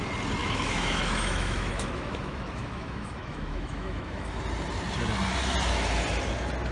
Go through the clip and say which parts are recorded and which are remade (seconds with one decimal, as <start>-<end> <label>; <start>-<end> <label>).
0.0-0.4 recorded; 0.4-4.4 remade; 4.4-6.7 recorded